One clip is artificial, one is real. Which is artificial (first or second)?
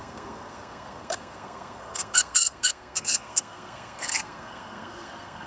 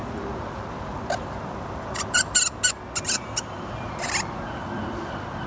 first